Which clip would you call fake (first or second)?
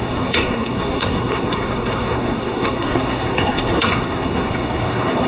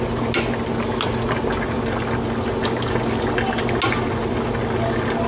first